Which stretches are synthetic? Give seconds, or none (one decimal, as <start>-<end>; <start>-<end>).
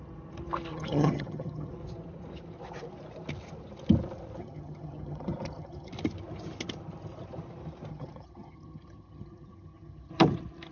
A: 0.7-1.7; 4.4-5.9; 7.9-10.1